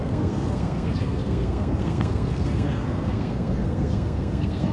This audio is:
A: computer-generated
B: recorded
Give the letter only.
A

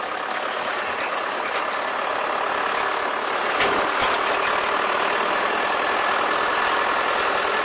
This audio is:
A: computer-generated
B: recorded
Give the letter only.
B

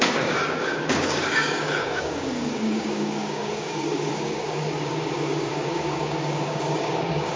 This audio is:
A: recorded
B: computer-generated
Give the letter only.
B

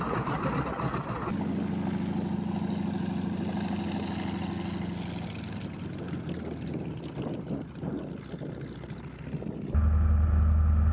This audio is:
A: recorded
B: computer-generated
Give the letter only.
A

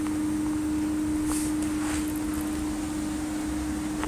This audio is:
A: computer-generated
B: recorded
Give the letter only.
B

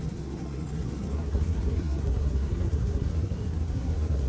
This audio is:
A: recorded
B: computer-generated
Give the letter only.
B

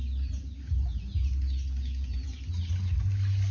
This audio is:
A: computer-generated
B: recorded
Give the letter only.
B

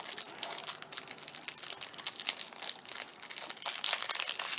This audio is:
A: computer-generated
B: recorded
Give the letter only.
B